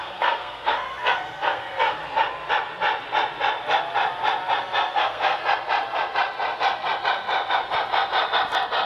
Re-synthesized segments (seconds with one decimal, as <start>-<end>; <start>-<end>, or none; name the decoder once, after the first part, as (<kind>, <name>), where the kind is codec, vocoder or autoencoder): 0.0-2.0 (codec, SNAC); 4.9-5.4